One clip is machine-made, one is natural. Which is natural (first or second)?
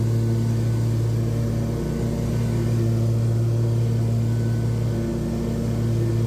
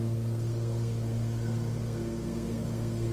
first